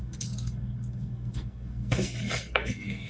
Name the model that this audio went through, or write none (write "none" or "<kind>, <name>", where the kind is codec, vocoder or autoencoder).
codec, SNAC